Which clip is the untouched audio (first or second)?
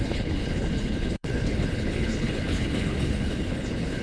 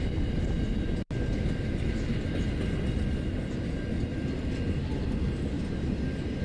second